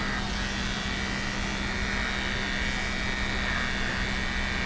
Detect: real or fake real